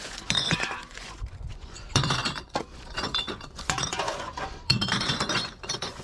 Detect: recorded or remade remade